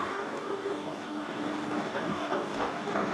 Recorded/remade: remade